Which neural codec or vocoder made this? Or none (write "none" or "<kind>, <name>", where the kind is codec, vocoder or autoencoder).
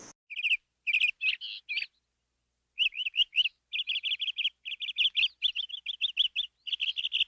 none